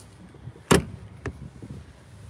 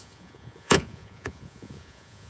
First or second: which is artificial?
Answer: second